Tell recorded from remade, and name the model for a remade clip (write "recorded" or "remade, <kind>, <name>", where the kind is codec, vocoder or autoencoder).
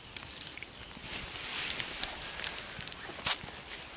recorded